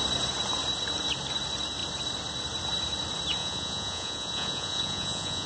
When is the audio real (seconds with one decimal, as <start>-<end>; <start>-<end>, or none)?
0.0-3.4